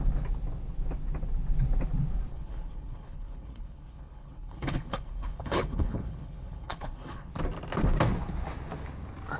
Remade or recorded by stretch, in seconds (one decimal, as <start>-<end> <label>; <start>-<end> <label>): 0.0-2.3 recorded; 2.3-7.3 remade; 7.3-9.4 recorded